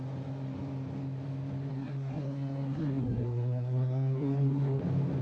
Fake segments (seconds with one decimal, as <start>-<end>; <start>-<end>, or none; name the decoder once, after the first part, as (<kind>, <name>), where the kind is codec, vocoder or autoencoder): 1.7-4.8 (codec, SNAC)